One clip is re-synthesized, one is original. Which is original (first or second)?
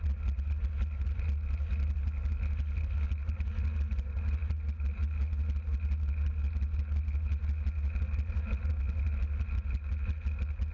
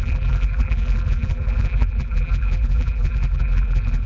first